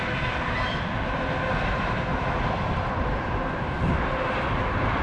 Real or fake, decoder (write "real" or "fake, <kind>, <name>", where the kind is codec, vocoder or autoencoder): real